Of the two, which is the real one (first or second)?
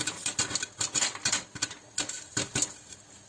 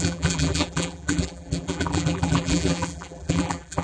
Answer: first